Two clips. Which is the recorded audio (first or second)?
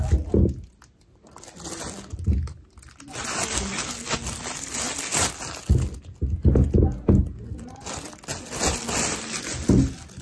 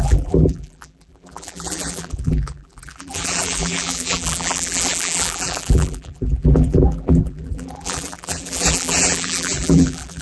first